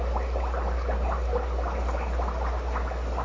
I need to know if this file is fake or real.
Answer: real